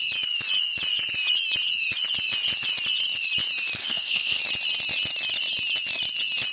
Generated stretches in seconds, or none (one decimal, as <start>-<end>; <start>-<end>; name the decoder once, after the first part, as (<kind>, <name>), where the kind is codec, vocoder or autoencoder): 3.8-4.4 (codec, SNAC)